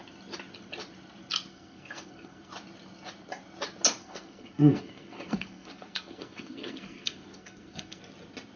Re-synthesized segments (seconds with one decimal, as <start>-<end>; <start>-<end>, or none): 1.5-2.5; 4.0-8.0